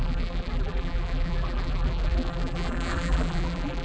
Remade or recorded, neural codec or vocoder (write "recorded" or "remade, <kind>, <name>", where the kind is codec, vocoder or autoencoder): remade, vocoder, BigVGAN v2